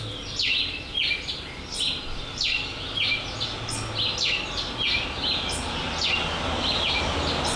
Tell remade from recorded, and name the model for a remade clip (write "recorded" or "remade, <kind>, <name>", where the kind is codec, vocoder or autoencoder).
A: recorded